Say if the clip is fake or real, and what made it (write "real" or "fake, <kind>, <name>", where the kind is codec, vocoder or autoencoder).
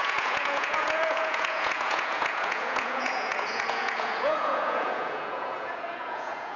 fake, vocoder, Vocos